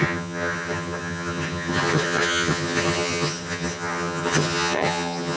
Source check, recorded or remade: remade